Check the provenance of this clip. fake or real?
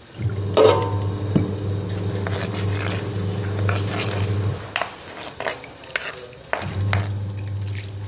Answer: real